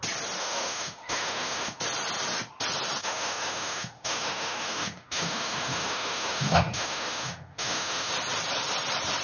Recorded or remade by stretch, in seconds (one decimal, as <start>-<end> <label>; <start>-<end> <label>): 0.0-0.4 recorded; 0.4-1.8 remade; 1.8-3.0 recorded; 3.0-8.1 remade; 8.1-9.2 recorded